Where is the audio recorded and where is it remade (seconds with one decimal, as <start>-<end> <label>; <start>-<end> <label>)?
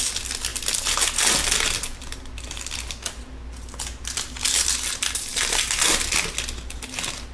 0.0-5.3 recorded; 5.3-5.8 remade; 5.8-7.3 recorded